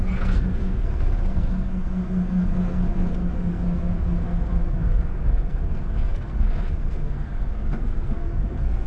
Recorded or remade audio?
remade